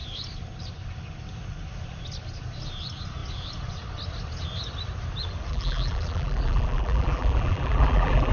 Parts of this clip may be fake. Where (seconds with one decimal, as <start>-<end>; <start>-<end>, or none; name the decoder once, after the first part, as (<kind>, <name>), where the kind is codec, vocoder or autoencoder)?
5.5-8.3 (vocoder, BigVGAN v2)